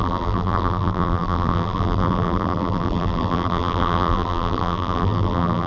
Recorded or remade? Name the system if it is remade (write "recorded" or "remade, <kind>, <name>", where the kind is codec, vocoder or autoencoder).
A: remade, vocoder, BigVGAN v2